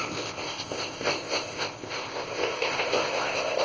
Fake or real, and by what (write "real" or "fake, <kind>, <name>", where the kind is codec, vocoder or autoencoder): fake, codec, ZipCodec